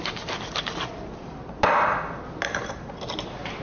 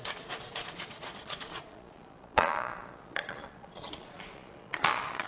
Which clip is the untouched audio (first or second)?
first